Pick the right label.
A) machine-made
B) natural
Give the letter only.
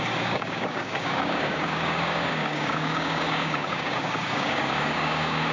A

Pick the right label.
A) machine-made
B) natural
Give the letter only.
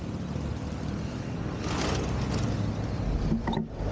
B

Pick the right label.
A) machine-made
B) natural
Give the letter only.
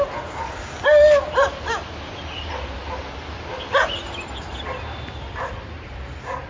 B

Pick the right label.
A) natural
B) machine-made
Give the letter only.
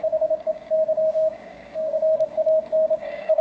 B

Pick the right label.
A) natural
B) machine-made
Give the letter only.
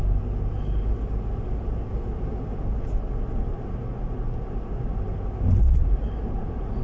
A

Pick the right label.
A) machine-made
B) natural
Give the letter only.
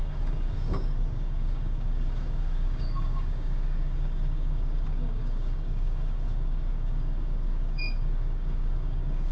A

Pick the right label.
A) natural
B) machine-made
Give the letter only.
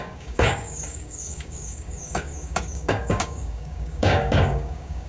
B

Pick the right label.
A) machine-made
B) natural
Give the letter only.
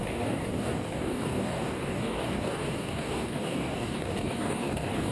A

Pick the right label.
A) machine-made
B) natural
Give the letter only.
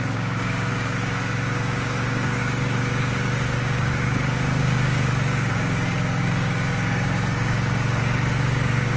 A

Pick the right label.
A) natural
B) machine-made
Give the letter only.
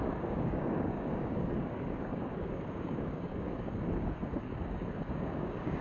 B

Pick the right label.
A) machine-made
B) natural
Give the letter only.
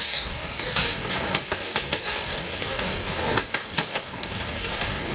A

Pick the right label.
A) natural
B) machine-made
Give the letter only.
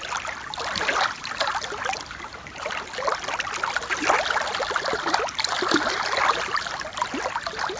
A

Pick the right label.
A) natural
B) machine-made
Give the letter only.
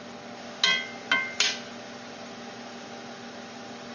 A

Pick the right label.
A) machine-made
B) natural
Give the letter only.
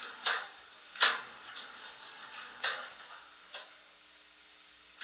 A